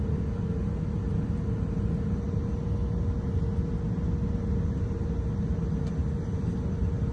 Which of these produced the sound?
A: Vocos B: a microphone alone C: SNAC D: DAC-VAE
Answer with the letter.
B